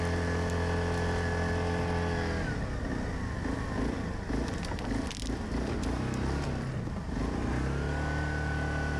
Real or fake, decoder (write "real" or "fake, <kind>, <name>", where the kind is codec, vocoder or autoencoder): real